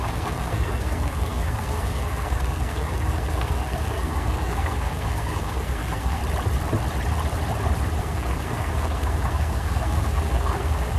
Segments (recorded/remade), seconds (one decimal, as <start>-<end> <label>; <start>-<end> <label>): 0.0-6.2 remade; 6.2-8.0 recorded; 8.0-11.0 remade